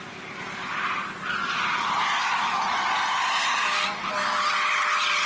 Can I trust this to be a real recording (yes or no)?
yes